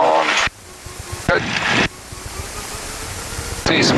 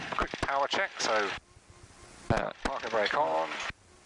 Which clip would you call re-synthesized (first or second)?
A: first